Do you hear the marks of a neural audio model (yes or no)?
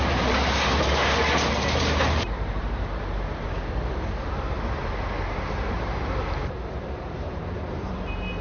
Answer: yes